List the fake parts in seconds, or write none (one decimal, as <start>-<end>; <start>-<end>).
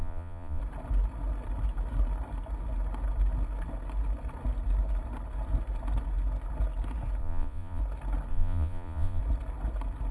0.0-0.6; 7.2-7.8; 8.3-9.2